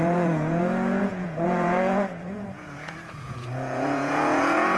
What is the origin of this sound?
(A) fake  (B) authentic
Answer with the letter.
A